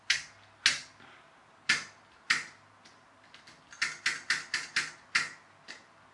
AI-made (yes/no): no